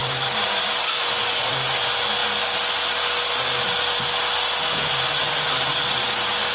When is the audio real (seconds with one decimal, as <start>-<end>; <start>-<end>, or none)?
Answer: 0.0-6.5